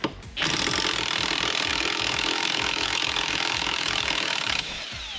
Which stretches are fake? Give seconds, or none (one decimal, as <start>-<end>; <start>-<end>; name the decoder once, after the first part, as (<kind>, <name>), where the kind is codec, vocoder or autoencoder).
1.7-4.8 (autoencoder, DAC-VAE)

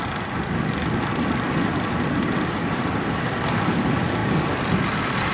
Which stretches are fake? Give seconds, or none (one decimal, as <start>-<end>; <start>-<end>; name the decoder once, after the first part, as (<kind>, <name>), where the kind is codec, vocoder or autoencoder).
none